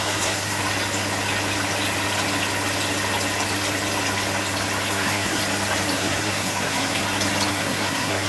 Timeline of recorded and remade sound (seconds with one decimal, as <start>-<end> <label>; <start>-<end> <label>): 0.0-0.6 remade; 0.6-4.9 recorded; 4.9-5.4 remade; 5.4-5.9 recorded; 5.9-7.0 remade; 7.0-7.5 recorded; 7.5-8.3 remade